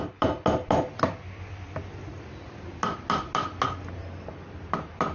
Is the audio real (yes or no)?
yes